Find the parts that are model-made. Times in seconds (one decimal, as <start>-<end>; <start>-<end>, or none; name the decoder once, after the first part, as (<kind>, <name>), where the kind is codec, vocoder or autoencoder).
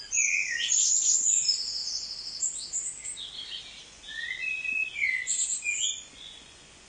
0.0-1.8 (vocoder, Vocos); 3.9-6.9